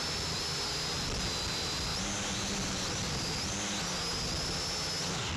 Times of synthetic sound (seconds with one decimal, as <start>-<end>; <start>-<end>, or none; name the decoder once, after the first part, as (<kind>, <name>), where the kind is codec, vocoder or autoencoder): none